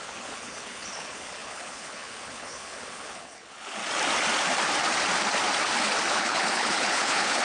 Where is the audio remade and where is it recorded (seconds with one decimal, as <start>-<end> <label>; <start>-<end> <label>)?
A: 0.0-3.8 remade; 3.8-6.1 recorded; 6.1-7.4 remade